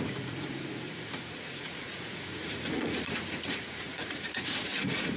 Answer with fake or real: fake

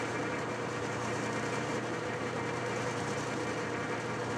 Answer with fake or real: fake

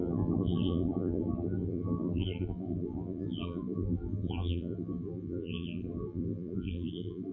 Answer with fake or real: fake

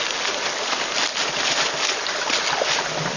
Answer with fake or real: real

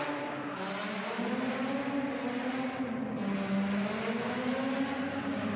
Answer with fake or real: real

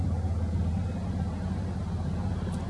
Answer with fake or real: real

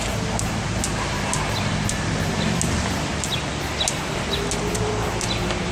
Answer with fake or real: real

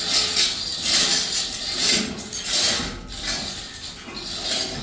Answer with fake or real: real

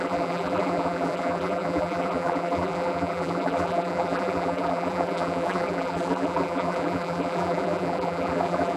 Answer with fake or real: fake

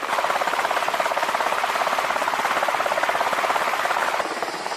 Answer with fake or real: real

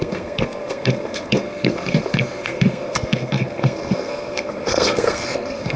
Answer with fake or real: fake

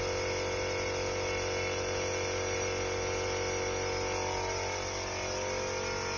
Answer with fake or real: real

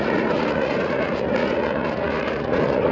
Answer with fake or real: fake